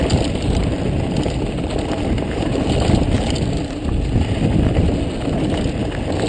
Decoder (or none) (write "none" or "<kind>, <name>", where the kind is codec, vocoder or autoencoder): none